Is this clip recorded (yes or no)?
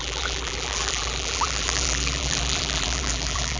no